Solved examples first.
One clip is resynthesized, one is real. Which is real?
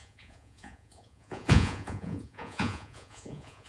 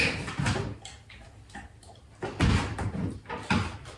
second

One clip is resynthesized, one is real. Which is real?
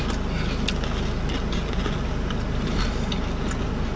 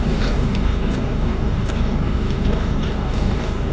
first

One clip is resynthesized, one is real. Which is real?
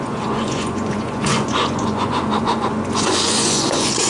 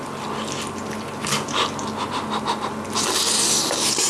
second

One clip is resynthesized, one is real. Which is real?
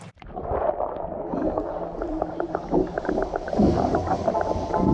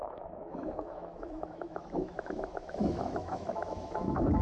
first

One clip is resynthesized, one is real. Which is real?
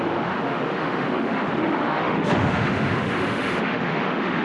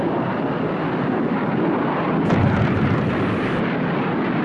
second